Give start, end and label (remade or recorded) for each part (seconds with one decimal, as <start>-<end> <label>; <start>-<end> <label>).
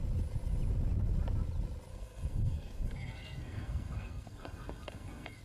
0.0-1.9 recorded; 1.9-5.4 remade